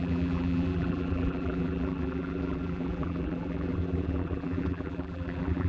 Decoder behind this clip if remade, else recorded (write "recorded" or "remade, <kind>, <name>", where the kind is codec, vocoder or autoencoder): remade, vocoder, BigVGAN v2